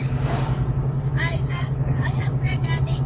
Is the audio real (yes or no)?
no